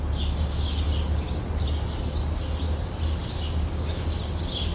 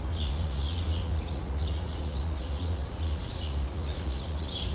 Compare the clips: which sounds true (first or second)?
first